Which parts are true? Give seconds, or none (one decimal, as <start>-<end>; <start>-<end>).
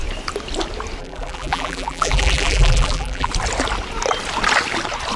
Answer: 0.0-1.0; 3.3-5.2